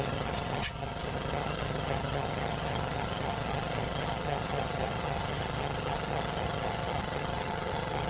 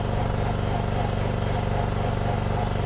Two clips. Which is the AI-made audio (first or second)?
first